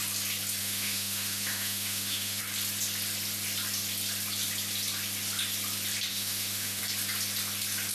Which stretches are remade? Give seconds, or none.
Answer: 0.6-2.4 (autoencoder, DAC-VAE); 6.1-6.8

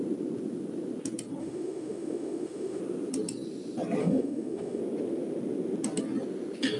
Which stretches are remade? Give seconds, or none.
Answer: 1.4-2.8 (autoencoder, DAC-VAE); 4.0-4.8